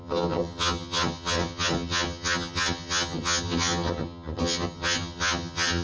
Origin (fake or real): fake